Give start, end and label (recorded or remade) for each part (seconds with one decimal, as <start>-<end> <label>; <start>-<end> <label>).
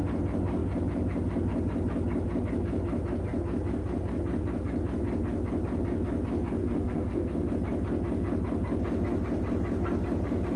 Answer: 0.0-6.6 recorded; 6.6-7.5 remade; 7.5-10.6 recorded